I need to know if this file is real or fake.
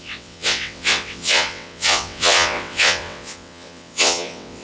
fake